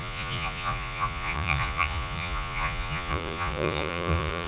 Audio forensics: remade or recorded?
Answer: remade